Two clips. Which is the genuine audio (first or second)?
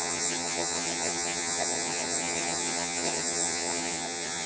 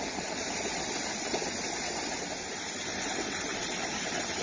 second